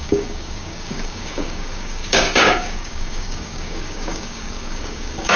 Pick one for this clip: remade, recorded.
remade